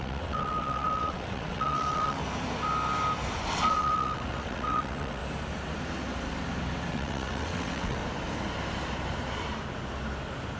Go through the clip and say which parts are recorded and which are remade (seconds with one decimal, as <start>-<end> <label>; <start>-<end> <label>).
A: 0.0-2.2 remade; 2.2-3.5 recorded; 3.5-5.2 remade; 5.2-6.9 recorded; 6.9-8.0 remade; 8.0-10.6 recorded